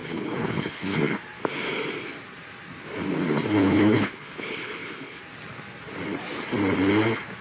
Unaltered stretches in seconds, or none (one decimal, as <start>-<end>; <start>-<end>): 1.0-3.6; 5.2-7.4